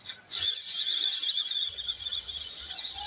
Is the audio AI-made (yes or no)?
yes